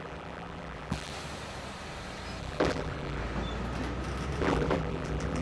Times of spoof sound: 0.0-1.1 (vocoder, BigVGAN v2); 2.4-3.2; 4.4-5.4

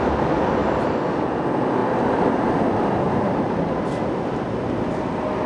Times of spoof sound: none

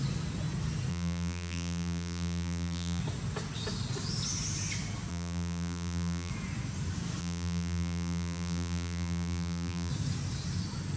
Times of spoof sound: 0.9-3.0 (vocoder, BigVGAN v2); 5.1-6.3; 7.2-9.9

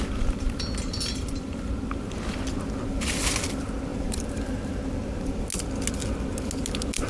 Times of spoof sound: 3.9-5.4 (vocoder, BigVGAN v2)